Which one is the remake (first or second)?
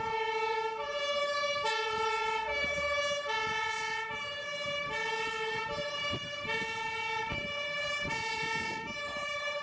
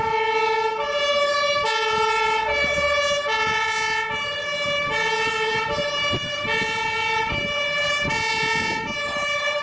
first